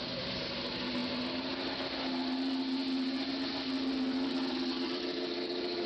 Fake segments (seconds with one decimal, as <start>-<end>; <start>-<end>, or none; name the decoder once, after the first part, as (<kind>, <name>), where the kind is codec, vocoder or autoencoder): none